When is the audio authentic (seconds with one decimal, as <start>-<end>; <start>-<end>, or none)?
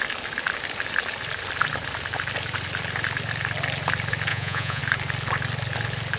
0.0-4.3; 4.8-6.2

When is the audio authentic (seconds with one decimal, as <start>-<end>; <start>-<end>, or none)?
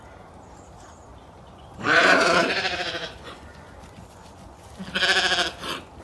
0.0-1.1; 4.7-6.0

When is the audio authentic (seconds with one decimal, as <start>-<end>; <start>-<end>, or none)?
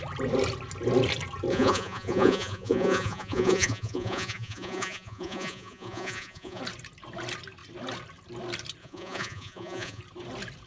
0.0-1.5; 6.6-8.8; 10.0-10.7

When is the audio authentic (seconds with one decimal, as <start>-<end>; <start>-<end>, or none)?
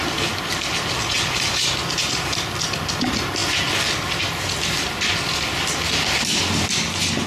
0.0-7.3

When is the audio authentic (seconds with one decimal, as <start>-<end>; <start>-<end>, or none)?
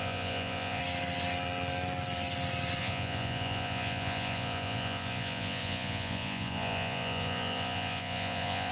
0.8-2.8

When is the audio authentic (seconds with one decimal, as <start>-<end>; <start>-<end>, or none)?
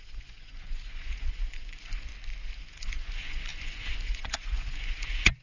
2.1-2.6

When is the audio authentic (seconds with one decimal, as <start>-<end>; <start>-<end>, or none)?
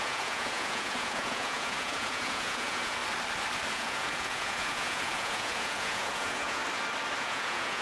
3.0-3.7; 6.6-7.2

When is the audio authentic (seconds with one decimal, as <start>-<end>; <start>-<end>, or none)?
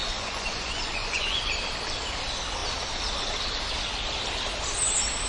1.5-5.3